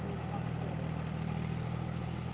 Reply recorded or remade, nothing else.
recorded